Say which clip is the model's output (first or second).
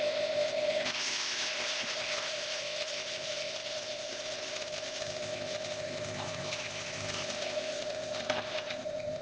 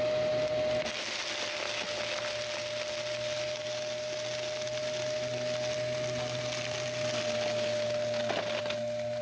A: first